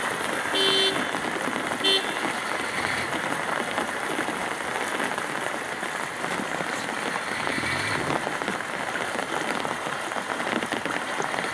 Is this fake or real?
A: real